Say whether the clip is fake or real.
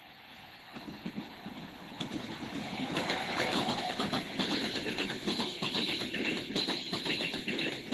fake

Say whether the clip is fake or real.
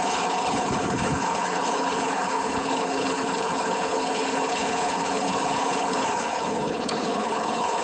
fake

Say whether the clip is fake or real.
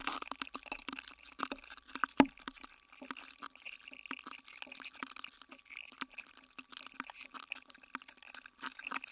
real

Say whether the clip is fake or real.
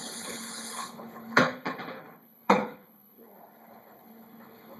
fake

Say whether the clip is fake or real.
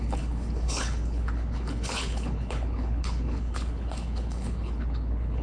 fake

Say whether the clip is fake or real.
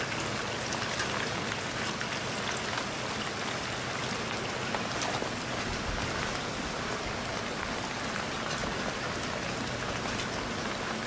real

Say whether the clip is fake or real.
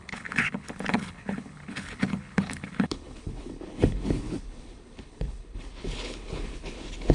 fake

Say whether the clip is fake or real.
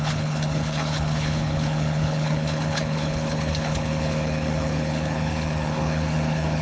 fake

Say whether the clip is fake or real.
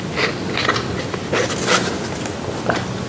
real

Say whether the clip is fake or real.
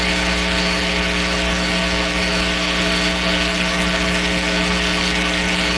fake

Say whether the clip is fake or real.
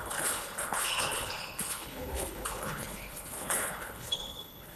fake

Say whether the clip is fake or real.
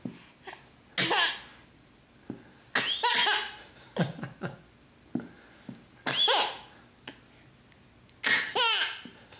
real